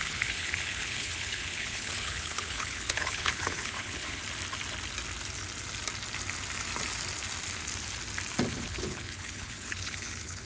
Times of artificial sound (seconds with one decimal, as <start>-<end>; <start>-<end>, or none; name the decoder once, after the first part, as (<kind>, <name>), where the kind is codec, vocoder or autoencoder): 0.0-4.2 (codec, HILCodec); 8.5-10.5